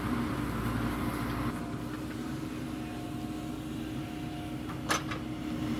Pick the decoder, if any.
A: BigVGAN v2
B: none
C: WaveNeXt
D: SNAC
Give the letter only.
B